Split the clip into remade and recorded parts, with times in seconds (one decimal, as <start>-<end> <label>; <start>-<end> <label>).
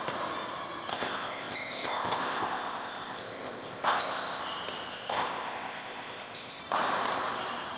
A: 0.0-0.9 recorded; 0.9-4.4 remade; 4.4-4.9 recorded; 4.9-6.6 remade; 6.6-7.8 recorded